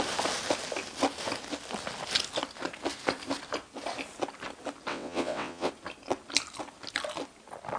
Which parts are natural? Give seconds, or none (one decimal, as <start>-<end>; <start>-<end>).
0.0-4.9; 5.7-7.8

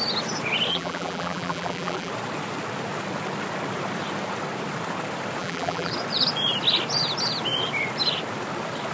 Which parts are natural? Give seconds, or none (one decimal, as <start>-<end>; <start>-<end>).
0.0-0.7; 2.1-5.4; 5.9-8.9

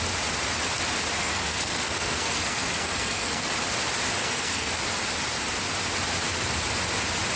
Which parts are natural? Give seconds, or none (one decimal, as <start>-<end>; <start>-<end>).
0.0-1.2; 3.5-4.2; 4.8-7.4

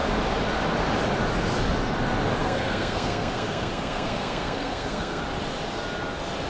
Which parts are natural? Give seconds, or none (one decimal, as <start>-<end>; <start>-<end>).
0.0-2.4; 5.2-6.5

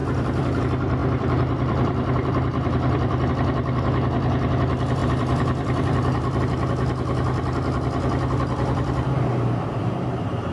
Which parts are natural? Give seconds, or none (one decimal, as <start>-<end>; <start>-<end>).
0.6-1.0; 3.3-5.0; 6.4-10.5